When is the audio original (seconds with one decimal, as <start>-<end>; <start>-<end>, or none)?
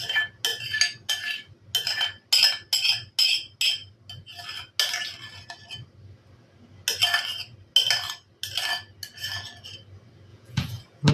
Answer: 0.0-10.3